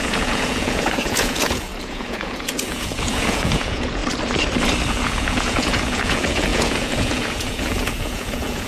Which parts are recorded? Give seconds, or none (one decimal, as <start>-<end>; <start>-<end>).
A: 4.0-4.9